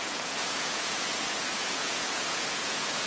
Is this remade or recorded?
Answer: remade